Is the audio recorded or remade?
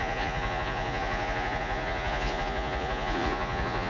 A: remade